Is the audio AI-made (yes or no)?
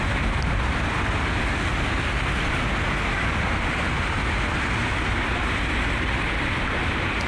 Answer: no